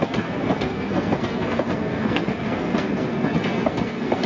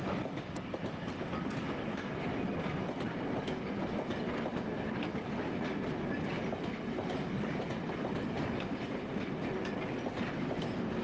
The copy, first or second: first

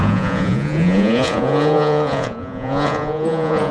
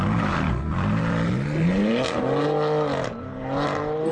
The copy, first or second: first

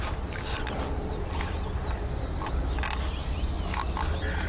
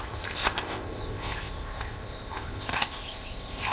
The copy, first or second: second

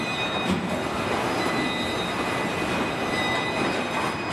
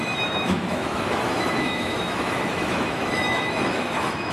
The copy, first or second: second